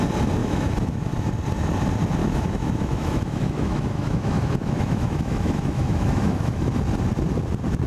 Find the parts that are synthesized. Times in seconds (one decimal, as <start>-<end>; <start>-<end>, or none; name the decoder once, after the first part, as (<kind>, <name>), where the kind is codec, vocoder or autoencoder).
0.4-1.3 (autoencoder, DAC-VAE); 2.2-6.7